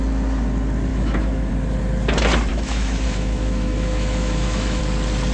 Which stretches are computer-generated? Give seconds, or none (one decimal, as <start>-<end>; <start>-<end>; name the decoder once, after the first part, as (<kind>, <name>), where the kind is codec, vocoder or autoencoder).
0.9-1.5 (autoencoder, DAC-VAE); 2.5-4.8